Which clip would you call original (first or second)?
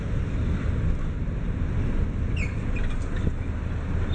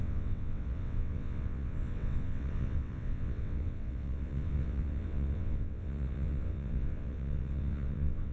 first